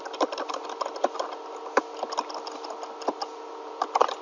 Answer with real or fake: real